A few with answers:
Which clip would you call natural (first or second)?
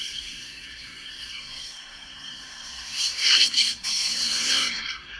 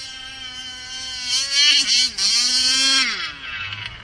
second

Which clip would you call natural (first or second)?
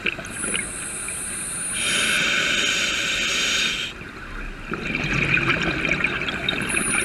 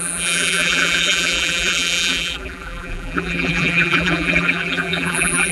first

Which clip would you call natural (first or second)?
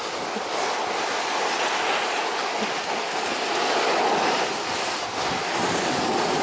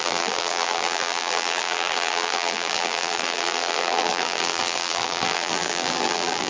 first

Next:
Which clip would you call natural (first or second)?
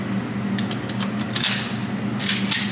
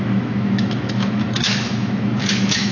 first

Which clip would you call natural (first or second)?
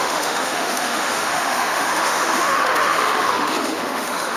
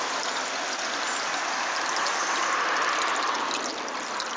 second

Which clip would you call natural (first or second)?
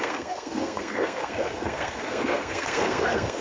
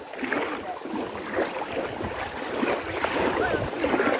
second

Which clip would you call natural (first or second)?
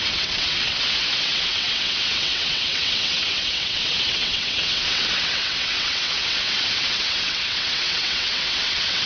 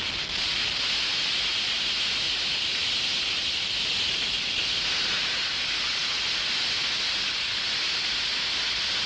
second